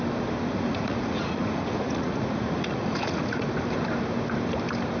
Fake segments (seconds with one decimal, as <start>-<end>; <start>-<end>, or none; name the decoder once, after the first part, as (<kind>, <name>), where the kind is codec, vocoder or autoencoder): 0.5-3.5 (vocoder, Vocos)